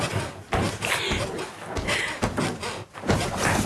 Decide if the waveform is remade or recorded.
recorded